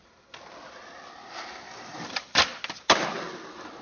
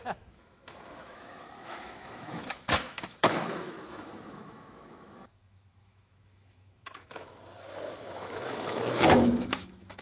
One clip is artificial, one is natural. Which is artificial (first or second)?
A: second